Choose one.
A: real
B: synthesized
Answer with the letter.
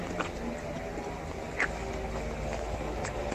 A